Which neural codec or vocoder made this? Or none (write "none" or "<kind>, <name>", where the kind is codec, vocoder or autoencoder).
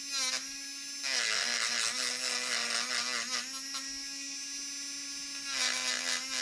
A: none